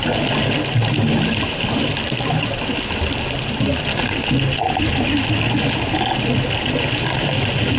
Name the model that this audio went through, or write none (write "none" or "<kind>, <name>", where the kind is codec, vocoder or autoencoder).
none